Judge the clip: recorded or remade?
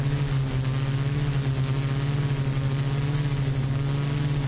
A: recorded